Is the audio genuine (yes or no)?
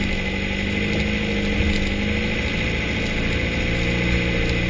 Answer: yes